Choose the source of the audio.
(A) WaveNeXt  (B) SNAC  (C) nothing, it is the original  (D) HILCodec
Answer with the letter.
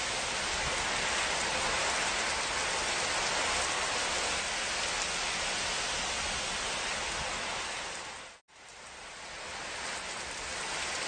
C